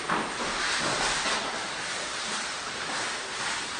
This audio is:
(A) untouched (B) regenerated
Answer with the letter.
A